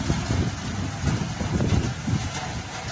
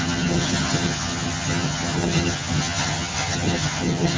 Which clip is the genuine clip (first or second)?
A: first